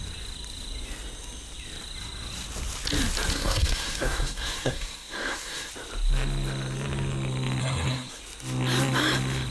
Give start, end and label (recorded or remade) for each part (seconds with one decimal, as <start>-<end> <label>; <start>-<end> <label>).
0.0-3.3 recorded; 3.3-5.7 remade; 5.7-7.6 recorded; 7.6-8.2 remade; 8.2-9.5 recorded